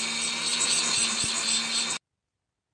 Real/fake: real